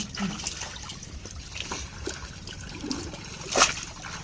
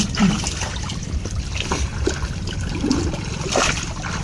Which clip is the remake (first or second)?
second